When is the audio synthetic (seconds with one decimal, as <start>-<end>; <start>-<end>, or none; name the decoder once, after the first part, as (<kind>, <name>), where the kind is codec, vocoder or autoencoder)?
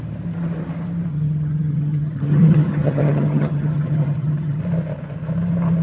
1.1-4.6 (vocoder, HiFi-GAN)